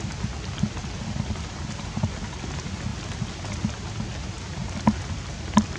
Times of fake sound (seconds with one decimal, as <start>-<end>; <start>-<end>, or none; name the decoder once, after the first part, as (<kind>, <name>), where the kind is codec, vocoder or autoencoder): none